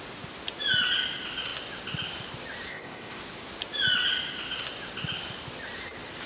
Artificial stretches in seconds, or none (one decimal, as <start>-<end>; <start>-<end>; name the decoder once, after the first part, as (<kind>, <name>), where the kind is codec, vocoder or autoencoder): 2.7-3.2 (codec, ZipCodec)